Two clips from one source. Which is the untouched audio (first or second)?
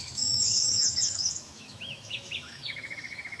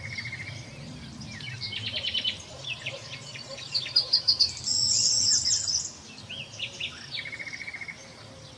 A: second